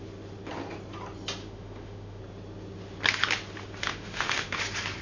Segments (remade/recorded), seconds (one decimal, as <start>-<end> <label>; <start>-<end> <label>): 0.0-1.4 recorded; 1.4-2.2 remade; 2.2-3.8 recorded; 3.8-4.6 remade; 4.6-5.0 recorded